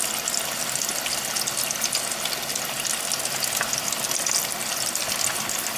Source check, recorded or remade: recorded